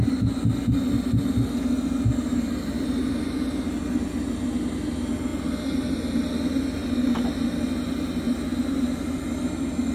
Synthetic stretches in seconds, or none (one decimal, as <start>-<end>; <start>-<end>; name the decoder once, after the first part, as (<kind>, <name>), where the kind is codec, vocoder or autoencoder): none

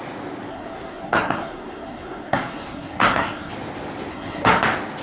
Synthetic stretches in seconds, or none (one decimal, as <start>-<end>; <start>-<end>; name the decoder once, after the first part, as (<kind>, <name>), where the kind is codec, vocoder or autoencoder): 0.5-3.5 (codec, SNAC); 4.1-4.6